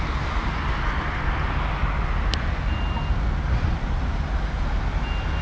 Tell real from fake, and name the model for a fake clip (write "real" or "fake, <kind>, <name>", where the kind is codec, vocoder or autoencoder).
real